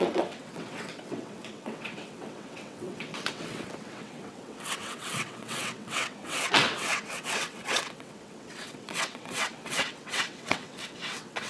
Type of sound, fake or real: fake